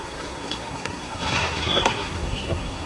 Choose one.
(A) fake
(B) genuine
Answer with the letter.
A